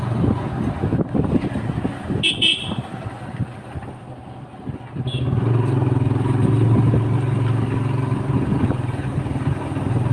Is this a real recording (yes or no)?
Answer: yes